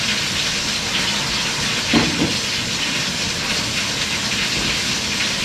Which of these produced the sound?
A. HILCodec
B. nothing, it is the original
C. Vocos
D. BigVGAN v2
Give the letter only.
B